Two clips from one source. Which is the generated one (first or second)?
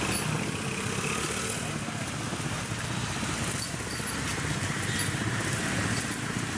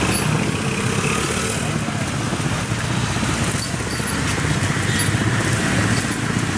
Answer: first